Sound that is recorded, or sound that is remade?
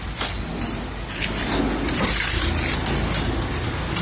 recorded